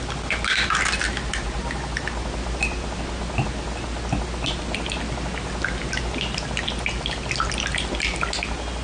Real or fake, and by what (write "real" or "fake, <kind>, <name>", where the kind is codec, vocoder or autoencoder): real